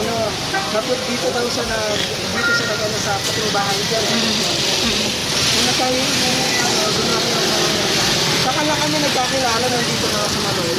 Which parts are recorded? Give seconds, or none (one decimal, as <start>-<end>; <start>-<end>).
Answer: 2.3-3.3; 5.2-5.7; 7.1-7.7; 8.4-9.7